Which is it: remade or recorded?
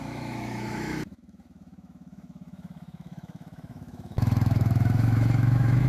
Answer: remade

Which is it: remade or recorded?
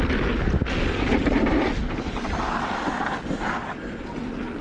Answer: recorded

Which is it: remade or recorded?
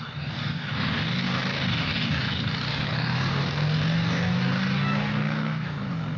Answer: remade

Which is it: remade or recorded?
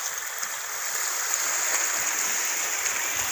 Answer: recorded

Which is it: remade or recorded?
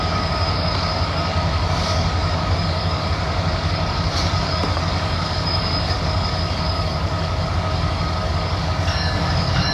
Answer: remade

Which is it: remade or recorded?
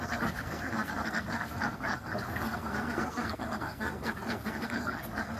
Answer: remade